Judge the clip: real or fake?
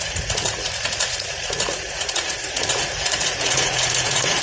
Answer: fake